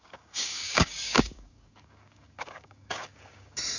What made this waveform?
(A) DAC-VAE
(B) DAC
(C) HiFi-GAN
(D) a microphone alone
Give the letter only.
B